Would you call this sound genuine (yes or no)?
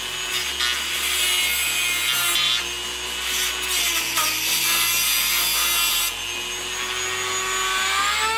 yes